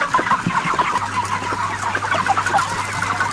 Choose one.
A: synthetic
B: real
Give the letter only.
B